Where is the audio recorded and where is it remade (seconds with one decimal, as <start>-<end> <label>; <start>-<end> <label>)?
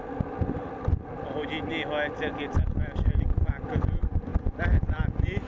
0.0-5.5 recorded